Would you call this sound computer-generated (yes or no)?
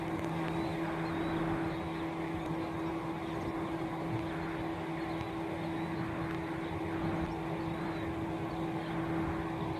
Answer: no